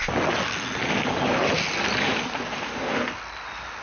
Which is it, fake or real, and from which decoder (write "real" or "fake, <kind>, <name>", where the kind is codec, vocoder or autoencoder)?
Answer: real